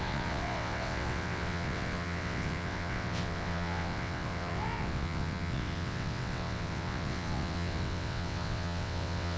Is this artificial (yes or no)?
yes